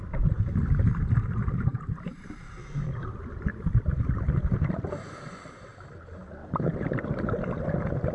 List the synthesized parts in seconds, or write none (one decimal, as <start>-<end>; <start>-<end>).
1.7-2.5; 6.4-7.0